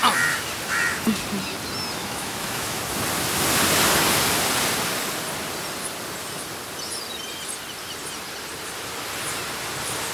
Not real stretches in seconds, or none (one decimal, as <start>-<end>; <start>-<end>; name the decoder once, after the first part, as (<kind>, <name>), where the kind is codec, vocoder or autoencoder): 2.0-2.8 (autoencoder, DAC-VAE)